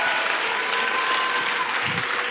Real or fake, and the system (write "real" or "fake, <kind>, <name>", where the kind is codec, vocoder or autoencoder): real